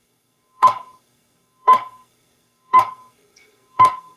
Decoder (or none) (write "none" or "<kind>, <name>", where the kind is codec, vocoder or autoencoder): codec, SNAC